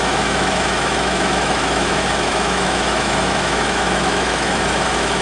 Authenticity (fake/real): fake